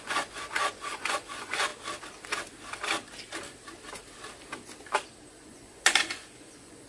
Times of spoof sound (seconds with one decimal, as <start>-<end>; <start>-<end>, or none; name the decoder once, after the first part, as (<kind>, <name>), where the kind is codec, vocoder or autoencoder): 0.0-1.7 (vocoder, Vocos); 5.3-6.9